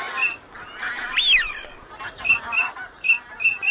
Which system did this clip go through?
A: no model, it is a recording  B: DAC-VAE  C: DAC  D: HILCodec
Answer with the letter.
A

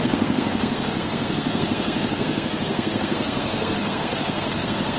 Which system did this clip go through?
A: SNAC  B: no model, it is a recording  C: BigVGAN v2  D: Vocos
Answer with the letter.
A